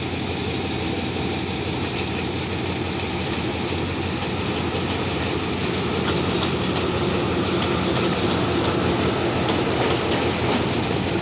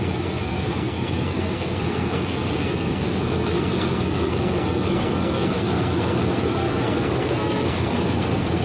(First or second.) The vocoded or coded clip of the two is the second